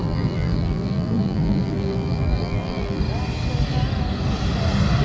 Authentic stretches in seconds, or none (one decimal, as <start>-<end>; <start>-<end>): 3.0-5.0